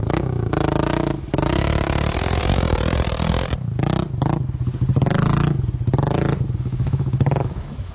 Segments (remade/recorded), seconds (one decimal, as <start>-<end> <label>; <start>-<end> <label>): 0.0-2.4 remade; 2.4-6.6 recorded; 6.6-7.9 remade